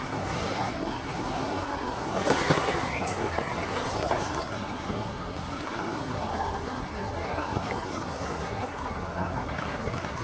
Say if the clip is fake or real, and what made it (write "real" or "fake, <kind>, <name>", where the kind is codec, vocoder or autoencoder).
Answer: fake, codec, SNAC